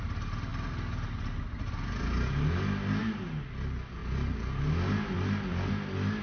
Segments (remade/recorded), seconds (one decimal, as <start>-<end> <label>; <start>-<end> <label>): 0.0-6.2 recorded